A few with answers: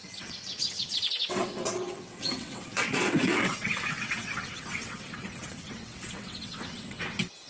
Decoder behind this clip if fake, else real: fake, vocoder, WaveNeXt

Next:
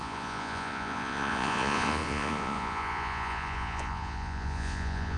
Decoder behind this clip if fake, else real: fake, vocoder, Vocos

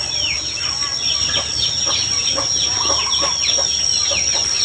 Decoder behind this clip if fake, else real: real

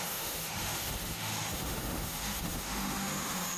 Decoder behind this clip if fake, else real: fake, autoencoder, DAC-VAE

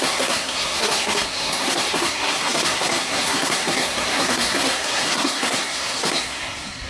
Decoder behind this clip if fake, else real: fake, codec, SNAC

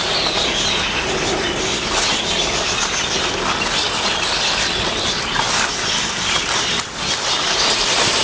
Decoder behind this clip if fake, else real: real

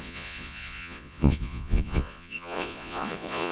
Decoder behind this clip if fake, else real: fake, vocoder, Vocos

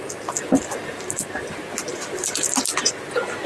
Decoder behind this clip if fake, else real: real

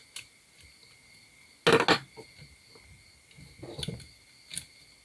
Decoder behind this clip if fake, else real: real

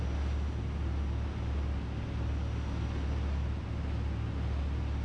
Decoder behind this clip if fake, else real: real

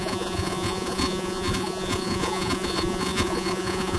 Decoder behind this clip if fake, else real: fake, vocoder, Vocos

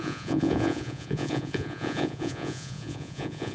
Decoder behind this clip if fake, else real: fake, vocoder, Vocos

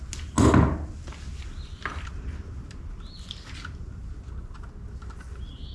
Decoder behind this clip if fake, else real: real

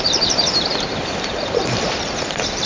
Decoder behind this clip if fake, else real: fake, vocoder, BigVGAN v2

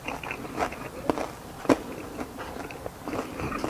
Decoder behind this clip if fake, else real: real